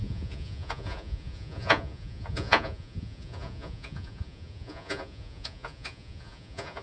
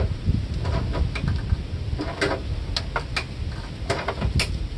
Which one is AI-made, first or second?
first